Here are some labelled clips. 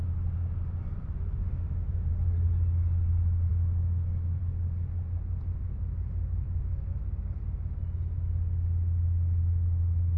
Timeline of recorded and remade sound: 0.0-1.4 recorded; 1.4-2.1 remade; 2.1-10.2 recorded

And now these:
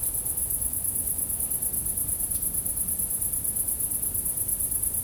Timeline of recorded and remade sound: 0.0-0.4 recorded; 0.4-1.4 remade; 1.4-5.0 recorded

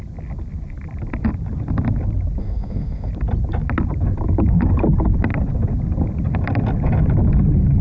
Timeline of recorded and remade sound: 0.0-2.4 recorded; 2.4-3.1 remade; 3.1-7.8 recorded